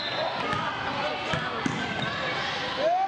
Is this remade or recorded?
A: recorded